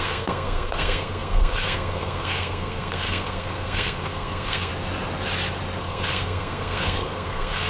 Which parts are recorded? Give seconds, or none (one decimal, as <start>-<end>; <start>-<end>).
4.7-5.8